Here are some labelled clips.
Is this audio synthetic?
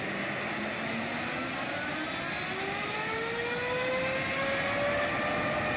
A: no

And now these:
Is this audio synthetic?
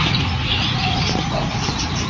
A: yes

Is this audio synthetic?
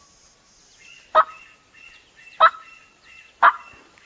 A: no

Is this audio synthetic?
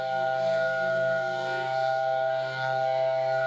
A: yes